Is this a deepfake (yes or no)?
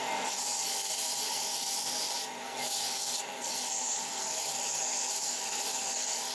yes